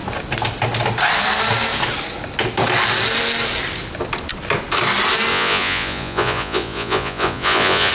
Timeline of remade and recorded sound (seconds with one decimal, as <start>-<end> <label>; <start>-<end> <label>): 0.0-5.3 recorded; 5.3-7.9 remade